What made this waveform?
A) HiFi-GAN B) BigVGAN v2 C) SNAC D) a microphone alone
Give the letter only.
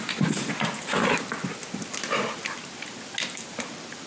D